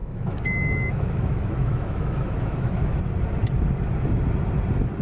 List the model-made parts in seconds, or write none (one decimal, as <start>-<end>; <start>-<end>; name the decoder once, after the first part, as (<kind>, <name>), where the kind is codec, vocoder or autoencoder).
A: 0.0-3.0 (autoencoder, DAC-VAE)